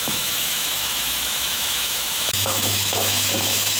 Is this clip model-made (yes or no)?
yes